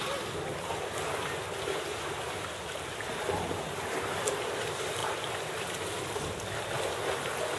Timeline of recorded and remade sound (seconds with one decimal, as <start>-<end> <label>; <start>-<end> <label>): 0.0-7.6 recorded